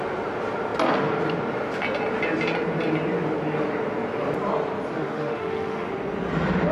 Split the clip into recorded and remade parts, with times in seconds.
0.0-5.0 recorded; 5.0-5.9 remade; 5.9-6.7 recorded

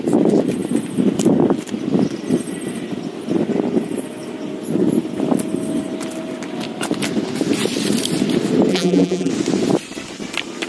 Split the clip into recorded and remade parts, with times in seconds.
0.0-8.7 recorded; 8.7-9.3 remade; 9.3-10.7 recorded

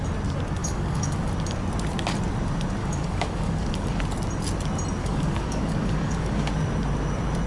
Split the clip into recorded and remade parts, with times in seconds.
0.0-0.6 recorded; 0.6-1.3 remade; 1.3-2.8 recorded; 2.8-4.0 remade; 4.0-5.0 recorded; 5.0-6.5 remade; 6.5-7.5 recorded

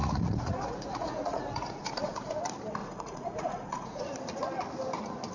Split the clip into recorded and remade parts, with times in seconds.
0.0-2.4 remade; 2.4-2.8 recorded; 2.8-4.0 remade; 4.0-5.3 recorded

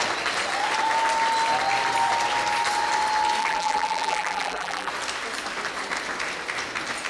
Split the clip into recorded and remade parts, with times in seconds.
0.0-3.4 recorded; 3.4-4.9 remade; 4.9-7.1 recorded

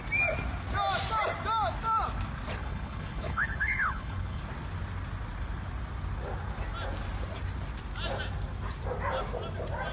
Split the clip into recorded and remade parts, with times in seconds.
0.0-2.6 recorded; 2.6-4.4 remade; 4.4-9.9 recorded